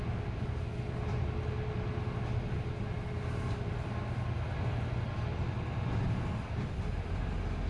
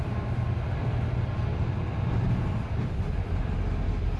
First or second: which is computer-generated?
second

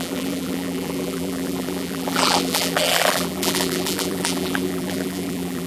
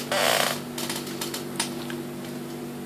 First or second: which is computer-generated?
first